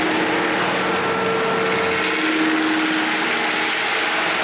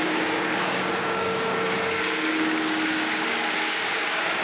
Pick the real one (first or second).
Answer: first